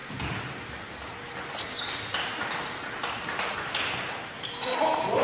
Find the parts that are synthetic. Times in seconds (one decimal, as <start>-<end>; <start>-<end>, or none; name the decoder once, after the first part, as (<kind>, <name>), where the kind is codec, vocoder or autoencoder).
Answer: none